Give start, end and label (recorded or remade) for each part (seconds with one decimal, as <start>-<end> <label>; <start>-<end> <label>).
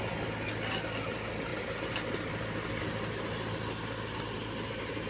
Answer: 0.0-5.1 recorded